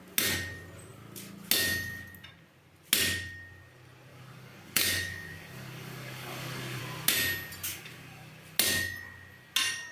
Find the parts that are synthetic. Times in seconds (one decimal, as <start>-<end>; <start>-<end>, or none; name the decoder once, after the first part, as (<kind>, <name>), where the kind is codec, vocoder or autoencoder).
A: 4.1-6.8 (codec, DAC); 7.7-8.3